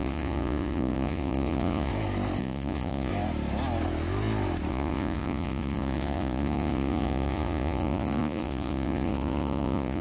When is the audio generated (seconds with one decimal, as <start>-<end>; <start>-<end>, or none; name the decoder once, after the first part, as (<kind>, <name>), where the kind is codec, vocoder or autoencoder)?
0.0-1.9 (vocoder, Vocos); 2.4-3.1; 4.7-10.0